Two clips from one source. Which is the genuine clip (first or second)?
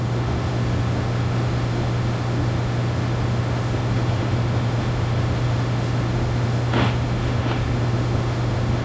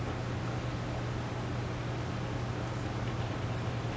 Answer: second